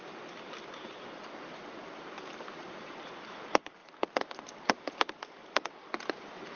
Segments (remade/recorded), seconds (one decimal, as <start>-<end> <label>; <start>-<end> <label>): 0.0-6.6 recorded